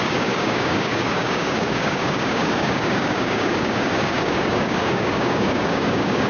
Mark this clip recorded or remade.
remade